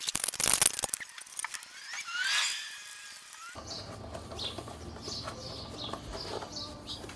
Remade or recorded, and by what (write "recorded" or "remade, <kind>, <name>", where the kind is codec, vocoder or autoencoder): recorded